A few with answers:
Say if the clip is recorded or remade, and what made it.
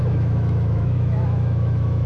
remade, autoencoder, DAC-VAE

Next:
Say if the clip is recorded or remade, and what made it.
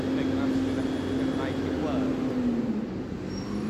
recorded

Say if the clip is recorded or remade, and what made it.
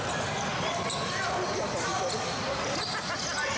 recorded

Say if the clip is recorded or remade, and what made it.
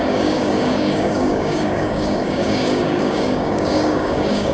remade, codec, DAC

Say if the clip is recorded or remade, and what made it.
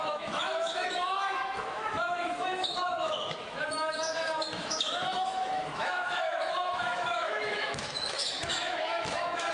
remade, autoencoder, DAC-VAE